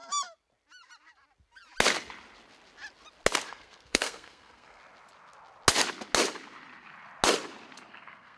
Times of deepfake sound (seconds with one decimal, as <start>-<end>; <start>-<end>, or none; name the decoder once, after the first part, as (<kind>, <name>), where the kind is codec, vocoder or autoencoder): 3.5-4.8 (codec, SNAC); 7.9-8.4